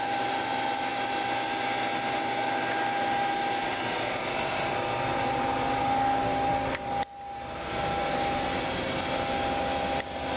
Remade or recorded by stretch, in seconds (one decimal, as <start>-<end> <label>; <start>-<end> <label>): 0.0-10.4 recorded

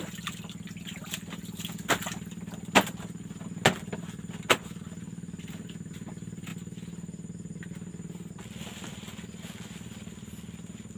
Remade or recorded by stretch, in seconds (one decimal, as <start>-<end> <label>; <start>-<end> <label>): 0.0-11.0 recorded

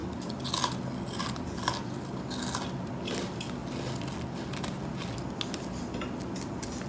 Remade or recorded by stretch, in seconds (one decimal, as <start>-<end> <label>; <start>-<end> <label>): 0.0-6.9 recorded

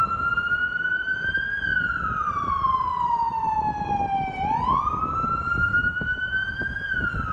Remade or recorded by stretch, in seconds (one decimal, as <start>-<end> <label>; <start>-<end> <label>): 0.0-1.7 recorded; 1.7-2.3 remade; 2.3-7.3 recorded

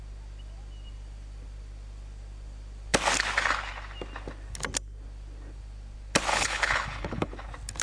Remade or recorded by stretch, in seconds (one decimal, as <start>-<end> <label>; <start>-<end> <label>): 0.0-6.3 recorded; 6.3-7.3 remade; 7.3-7.8 recorded

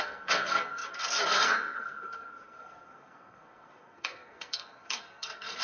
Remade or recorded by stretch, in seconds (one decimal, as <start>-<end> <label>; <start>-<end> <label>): 0.0-5.6 remade